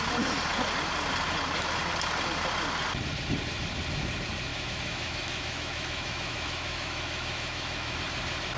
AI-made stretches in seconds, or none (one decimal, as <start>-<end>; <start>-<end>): 4.5-8.0